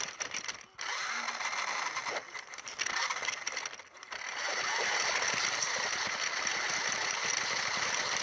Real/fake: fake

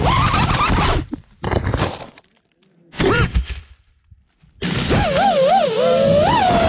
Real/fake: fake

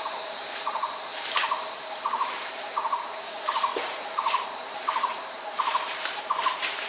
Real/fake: fake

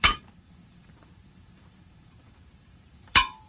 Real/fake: fake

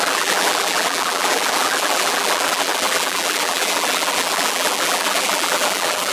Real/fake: fake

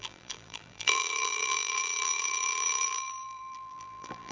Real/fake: fake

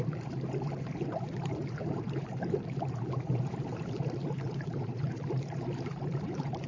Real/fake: fake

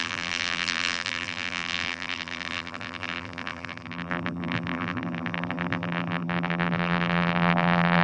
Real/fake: fake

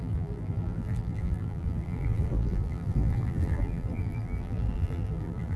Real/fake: fake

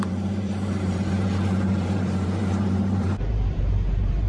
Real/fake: fake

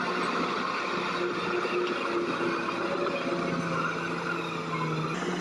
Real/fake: real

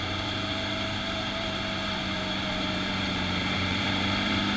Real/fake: fake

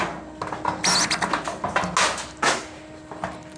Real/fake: real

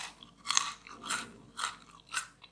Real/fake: fake